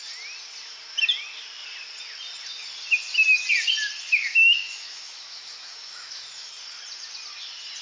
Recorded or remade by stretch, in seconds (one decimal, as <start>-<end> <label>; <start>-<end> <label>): 0.0-4.2 recorded; 4.2-6.5 remade; 6.5-7.8 recorded